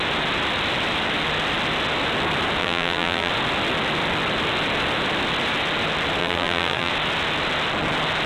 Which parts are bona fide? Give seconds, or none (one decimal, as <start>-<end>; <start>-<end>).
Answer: 0.0-2.6; 3.3-6.2; 6.9-8.3